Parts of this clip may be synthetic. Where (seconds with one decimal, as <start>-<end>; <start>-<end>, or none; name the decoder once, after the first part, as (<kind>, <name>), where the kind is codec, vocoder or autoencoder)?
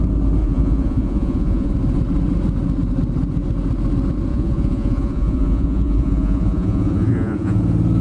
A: 0.4-1.7 (vocoder, Vocos); 4.3-7.6